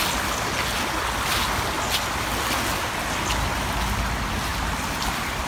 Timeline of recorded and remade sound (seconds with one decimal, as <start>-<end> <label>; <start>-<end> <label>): 0.0-5.5 recorded